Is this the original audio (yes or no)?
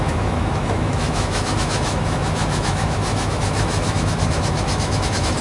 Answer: no